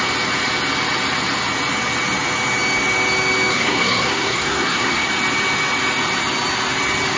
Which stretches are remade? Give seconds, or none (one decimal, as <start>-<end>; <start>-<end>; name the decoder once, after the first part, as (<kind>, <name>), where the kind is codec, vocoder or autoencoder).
3.5-5.1 (codec, SNAC)